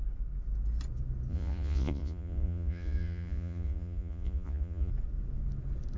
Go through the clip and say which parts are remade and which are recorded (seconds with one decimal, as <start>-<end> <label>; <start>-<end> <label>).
0.0-1.3 recorded; 1.3-4.9 remade; 4.9-6.0 recorded